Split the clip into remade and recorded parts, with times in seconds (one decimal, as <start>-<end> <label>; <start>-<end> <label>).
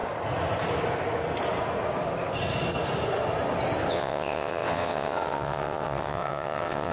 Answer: 0.0-3.9 recorded; 3.9-6.9 remade